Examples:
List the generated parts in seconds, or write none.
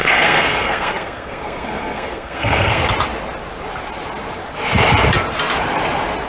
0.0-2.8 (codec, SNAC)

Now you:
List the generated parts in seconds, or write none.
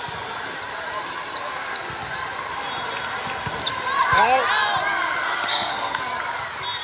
5.5-6.0 (codec, SNAC)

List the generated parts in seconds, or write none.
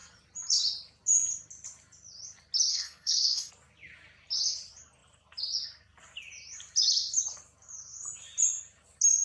2.7-3.5 (codec, SNAC)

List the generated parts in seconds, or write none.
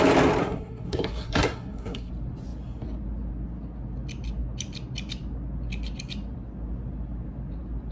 0.4-2.1 (codec, SNAC)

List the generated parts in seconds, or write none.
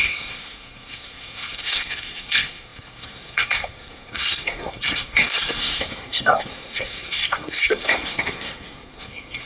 0.0-9.5 (codec, SNAC)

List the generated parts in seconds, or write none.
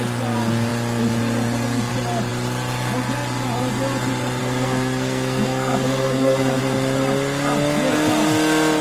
4.4-6.6 (codec, SNAC)